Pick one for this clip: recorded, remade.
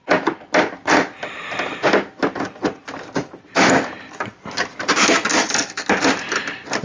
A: recorded